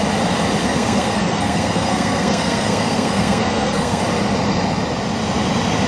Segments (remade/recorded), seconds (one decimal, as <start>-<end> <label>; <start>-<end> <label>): 0.0-0.6 recorded; 0.6-4.0 remade; 4.0-5.9 recorded